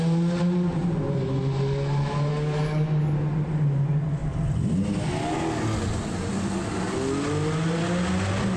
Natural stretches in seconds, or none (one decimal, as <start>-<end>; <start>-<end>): 0.0-2.3; 3.1-8.6